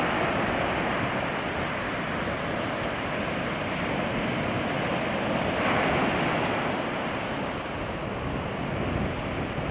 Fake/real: real